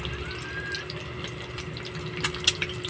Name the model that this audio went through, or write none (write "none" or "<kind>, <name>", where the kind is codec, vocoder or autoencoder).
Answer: none